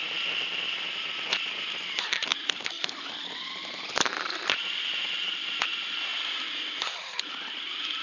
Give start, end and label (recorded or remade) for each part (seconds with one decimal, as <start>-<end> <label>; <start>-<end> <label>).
0.0-6.1 recorded; 6.1-7.0 remade; 7.0-8.0 recorded